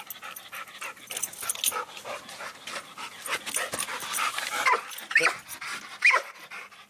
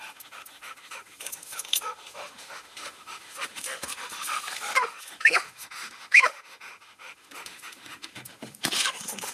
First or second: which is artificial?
second